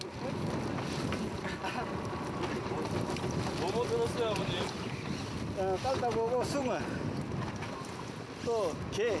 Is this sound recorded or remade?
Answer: recorded